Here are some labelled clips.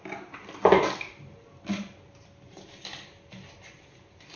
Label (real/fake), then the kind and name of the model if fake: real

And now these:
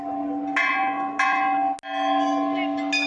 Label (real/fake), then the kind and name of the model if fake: real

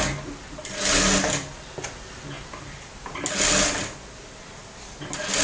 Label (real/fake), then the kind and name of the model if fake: real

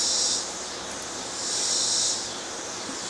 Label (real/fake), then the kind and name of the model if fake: real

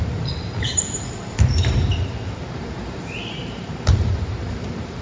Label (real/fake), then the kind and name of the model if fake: fake, vocoder, BigVGAN v2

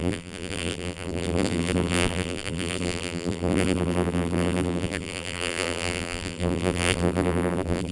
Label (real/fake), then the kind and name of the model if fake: fake, vocoder, BigVGAN v2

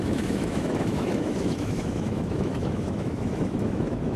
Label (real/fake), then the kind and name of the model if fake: fake, autoencoder, DAC-VAE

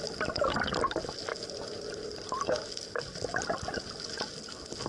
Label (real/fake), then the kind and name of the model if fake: real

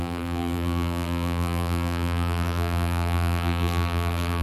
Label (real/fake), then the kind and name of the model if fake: fake, vocoder, BigVGAN v2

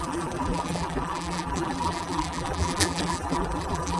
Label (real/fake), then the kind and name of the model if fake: fake, vocoder, BigVGAN v2